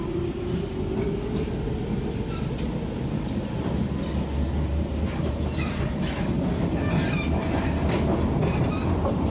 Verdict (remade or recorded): recorded